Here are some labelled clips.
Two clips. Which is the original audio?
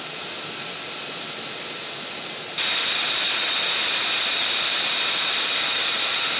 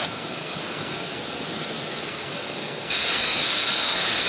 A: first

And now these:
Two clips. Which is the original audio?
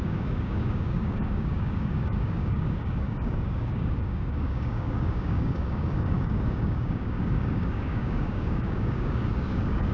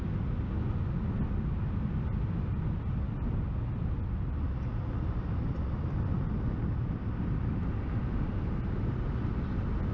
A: second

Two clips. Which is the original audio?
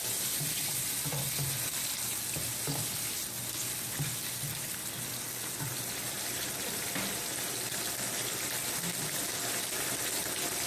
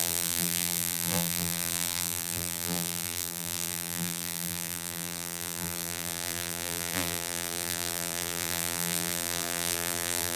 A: first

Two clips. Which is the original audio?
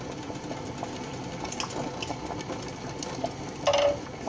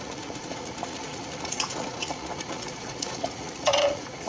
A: first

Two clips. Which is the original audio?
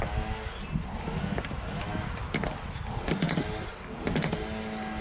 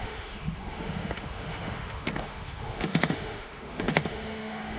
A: first